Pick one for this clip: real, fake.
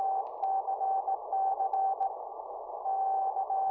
real